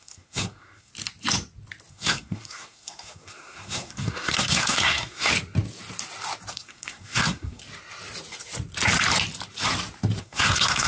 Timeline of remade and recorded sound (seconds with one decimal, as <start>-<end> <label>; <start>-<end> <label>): 0.0-0.9 remade; 0.9-1.9 recorded; 1.9-5.3 remade; 5.3-6.5 recorded; 6.5-7.6 remade; 7.6-10.2 recorded; 10.2-10.9 remade